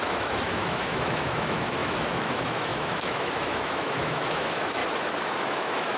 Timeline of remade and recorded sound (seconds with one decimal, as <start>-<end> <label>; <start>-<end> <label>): 0.0-4.8 remade; 4.8-5.4 recorded; 5.4-6.0 remade